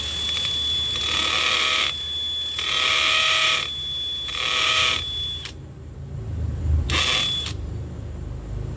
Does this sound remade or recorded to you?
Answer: recorded